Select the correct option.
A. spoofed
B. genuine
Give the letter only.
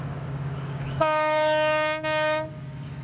A